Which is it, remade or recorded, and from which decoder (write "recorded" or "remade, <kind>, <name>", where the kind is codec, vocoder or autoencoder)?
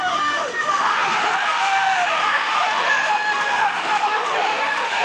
remade, autoencoder, DAC-VAE